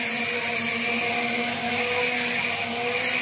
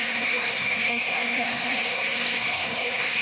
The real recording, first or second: first